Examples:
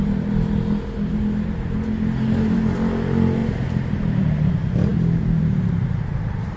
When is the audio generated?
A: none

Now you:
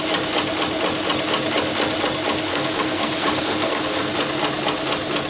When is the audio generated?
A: 2.5-4.1 (codec, SNAC)

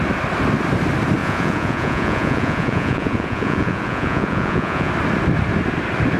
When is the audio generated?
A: 1.2-4.9 (vocoder, Vocos)

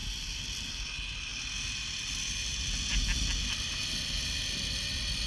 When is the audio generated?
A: none

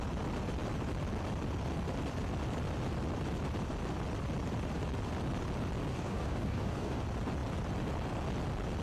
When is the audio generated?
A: 5.9-7.0 (codec, DAC)